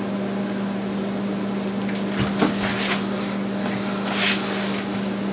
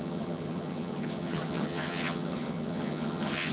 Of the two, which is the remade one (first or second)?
second